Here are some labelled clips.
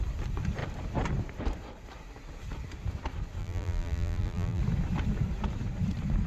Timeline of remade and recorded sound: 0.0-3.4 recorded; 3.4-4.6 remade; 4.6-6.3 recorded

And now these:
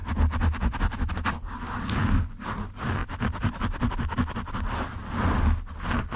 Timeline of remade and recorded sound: 0.0-1.1 remade; 1.1-3.0 recorded; 3.0-3.9 remade; 3.9-6.2 recorded

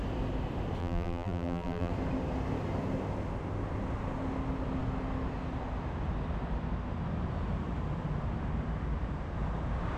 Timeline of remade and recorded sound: 0.0-0.8 recorded; 0.8-1.9 remade; 1.9-10.0 recorded

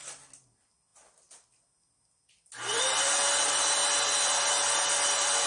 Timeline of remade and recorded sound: 0.0-5.5 recorded